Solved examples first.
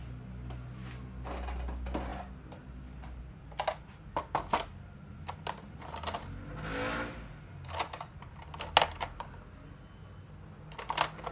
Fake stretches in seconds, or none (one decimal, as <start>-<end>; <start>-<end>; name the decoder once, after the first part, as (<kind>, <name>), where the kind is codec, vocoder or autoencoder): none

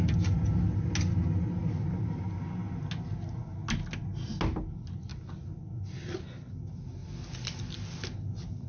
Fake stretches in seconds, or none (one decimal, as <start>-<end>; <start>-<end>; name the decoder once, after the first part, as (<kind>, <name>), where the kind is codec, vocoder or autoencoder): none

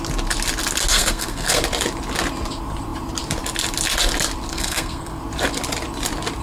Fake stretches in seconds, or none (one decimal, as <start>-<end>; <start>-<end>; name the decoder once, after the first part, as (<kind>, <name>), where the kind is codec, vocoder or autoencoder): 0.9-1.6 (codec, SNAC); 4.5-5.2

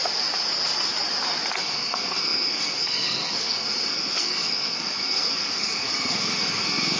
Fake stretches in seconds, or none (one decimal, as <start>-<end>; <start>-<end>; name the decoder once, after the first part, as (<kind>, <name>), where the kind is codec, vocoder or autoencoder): 1.6-7.0 (codec, SNAC)

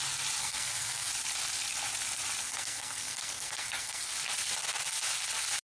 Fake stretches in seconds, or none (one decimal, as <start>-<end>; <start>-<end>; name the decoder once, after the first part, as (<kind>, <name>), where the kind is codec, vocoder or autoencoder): 0.4-1.1 (codec, SNAC); 2.4-4.1

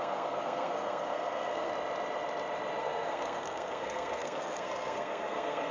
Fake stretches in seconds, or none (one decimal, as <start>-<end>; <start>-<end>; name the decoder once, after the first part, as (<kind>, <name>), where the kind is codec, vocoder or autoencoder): 0.0-1.7 (codec, SNAC); 2.8-5.7

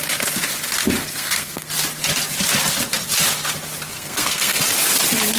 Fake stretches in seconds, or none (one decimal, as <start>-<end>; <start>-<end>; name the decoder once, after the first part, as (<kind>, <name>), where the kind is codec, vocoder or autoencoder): 1.0-1.7 (codec, SNAC); 3.9-4.6

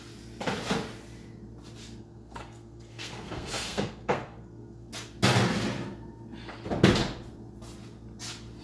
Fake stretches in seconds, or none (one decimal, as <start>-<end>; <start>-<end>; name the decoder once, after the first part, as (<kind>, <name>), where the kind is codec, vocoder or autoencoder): 2.0-4.9 (codec, SNAC)